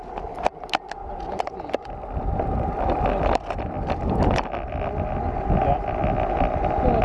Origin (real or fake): real